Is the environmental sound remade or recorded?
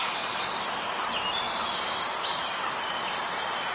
recorded